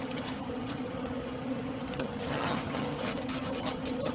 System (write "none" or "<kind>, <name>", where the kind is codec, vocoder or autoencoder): vocoder, HiFi-GAN